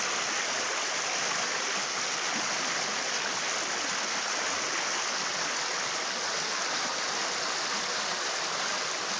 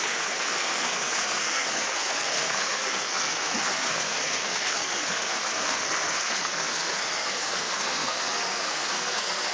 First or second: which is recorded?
first